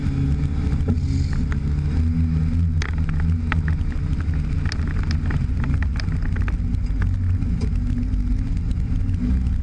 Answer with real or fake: real